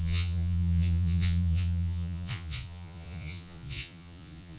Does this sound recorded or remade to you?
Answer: remade